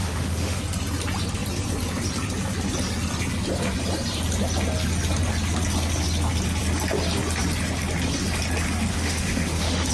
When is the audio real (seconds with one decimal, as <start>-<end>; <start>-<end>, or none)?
0.6-8.9